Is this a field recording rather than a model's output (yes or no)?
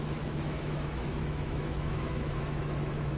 no